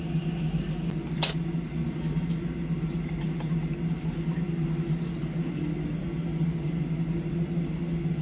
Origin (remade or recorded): recorded